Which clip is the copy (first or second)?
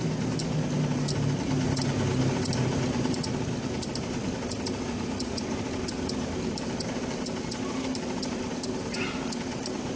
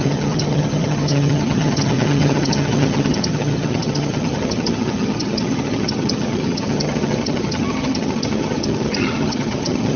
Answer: second